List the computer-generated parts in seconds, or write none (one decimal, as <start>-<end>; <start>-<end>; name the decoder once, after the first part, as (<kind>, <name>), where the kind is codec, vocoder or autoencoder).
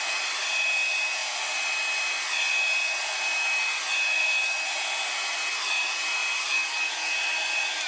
none